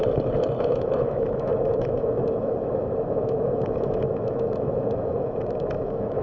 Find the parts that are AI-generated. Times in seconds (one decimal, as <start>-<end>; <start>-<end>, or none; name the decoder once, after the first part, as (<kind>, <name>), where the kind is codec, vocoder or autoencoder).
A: 0.6-6.2 (autoencoder, DAC-VAE)